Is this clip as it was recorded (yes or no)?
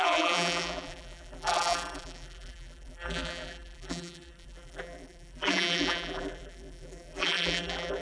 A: no